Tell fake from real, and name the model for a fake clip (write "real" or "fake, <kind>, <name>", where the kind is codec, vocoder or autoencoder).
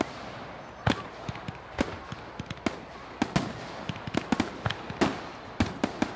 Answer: real